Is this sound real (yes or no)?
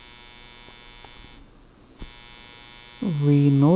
yes